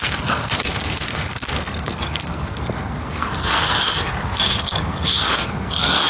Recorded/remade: remade